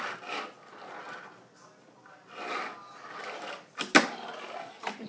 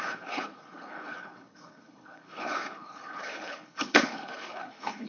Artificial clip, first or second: second